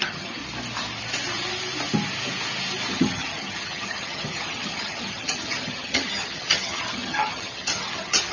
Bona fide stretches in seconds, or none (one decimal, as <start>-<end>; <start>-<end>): 0.4-2.9